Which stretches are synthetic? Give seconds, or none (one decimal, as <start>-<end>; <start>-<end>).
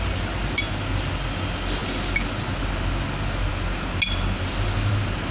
none